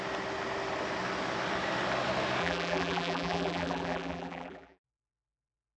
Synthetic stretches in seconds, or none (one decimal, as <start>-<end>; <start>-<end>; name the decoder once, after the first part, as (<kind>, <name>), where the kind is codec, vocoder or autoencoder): 2.4-5.8 (vocoder, BigVGAN v2)